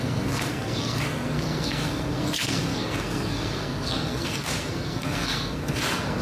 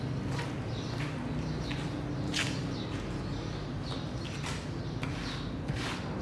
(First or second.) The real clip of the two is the second